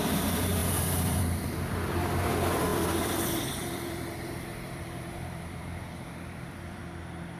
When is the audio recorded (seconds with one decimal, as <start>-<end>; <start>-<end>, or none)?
6.8-7.4

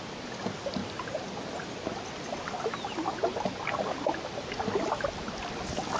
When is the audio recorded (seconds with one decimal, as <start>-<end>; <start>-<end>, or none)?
0.0-6.0

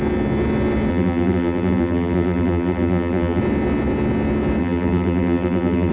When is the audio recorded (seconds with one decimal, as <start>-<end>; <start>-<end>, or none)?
0.0-0.9; 3.4-4.6

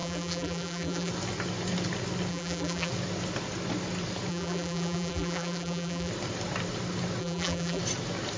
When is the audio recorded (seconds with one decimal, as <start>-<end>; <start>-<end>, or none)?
1.1-2.3; 2.9-4.3; 6.1-7.2; 7.8-8.4

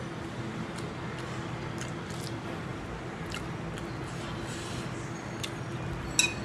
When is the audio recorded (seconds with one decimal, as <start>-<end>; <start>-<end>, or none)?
0.0-6.4

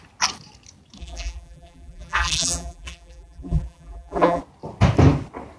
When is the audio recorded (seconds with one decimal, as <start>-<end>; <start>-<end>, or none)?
0.0-1.0; 4.4-5.6

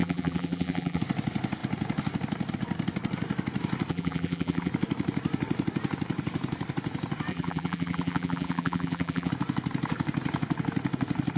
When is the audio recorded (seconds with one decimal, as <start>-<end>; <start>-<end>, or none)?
1.0-3.9; 4.7-7.3; 9.3-11.4